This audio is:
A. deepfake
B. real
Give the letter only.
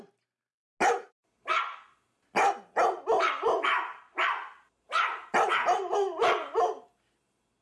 B